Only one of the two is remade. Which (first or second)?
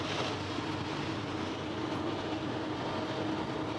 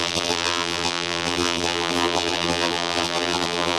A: second